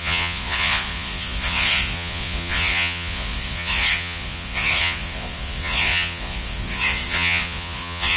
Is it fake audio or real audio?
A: fake